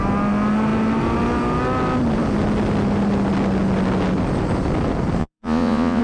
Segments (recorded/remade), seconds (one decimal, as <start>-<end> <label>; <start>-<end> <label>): 0.0-5.2 recorded; 5.2-6.0 remade